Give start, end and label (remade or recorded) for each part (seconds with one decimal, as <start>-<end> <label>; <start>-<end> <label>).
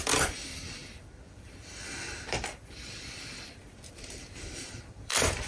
0.0-5.5 remade